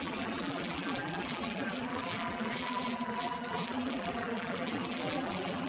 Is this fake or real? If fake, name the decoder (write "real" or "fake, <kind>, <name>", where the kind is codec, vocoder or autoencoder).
fake, vocoder, BigVGAN v2